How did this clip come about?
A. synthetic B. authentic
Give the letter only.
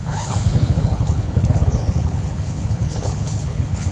A